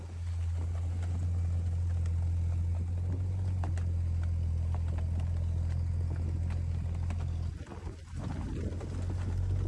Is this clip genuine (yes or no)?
yes